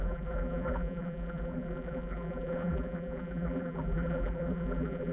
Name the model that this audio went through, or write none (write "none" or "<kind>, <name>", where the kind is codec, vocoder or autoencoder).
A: vocoder, BigVGAN v2